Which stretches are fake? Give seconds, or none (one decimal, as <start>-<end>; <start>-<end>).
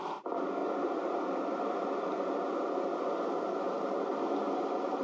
none